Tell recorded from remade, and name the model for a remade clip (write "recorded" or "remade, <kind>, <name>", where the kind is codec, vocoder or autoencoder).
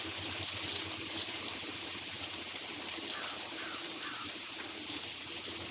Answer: recorded